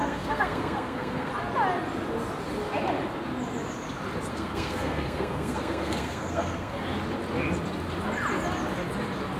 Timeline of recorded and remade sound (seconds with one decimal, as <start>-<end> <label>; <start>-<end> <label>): 0.0-1.3 remade; 1.3-4.3 recorded; 4.3-6.8 remade; 6.8-9.4 recorded